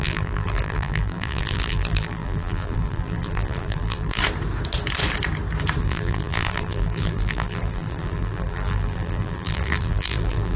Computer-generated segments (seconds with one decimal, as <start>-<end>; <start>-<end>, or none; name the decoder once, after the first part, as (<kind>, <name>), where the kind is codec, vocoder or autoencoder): 0.0-4.2 (vocoder, BigVGAN v2); 5.8-10.6